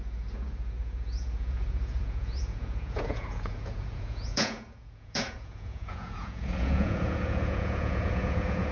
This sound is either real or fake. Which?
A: fake